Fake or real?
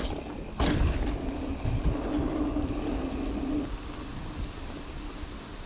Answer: real